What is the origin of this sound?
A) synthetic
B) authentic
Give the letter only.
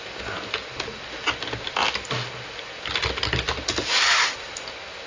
B